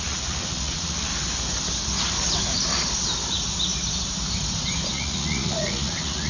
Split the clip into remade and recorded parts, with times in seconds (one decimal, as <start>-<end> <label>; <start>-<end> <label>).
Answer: 0.0-1.1 remade; 1.1-4.9 recorded; 4.9-6.3 remade